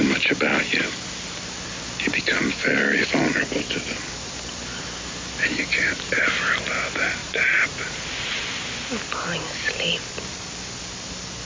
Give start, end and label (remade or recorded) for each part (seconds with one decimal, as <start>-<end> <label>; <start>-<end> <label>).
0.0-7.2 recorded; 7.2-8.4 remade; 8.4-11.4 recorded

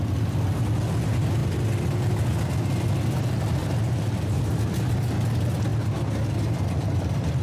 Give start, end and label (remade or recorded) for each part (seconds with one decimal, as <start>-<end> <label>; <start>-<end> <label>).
0.0-3.6 recorded; 3.6-4.4 remade; 4.4-7.4 recorded

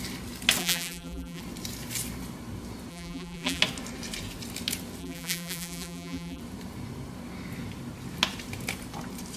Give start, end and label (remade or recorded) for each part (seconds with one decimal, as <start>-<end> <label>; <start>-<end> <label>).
0.0-0.6 recorded; 0.6-1.4 remade; 1.4-2.9 recorded; 2.9-3.6 remade; 3.6-5.0 recorded; 5.0-6.4 remade; 6.4-9.4 recorded

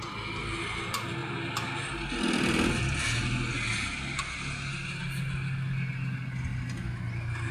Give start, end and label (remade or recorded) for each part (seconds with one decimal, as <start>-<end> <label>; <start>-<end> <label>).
0.0-7.5 recorded

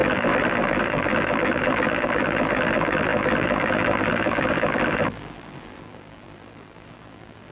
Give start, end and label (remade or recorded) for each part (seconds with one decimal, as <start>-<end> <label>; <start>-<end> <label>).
0.0-7.5 remade

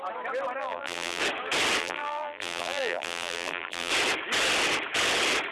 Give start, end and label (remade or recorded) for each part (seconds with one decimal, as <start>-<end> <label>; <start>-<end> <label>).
0.0-0.6 recorded; 0.6-1.2 remade; 1.2-1.8 recorded; 1.8-3.9 remade; 3.9-5.5 recorded

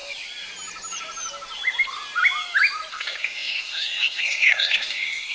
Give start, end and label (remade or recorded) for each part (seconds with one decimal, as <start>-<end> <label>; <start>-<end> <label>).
0.0-2.9 recorded; 2.9-5.3 remade